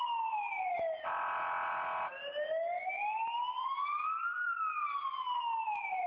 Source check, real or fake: real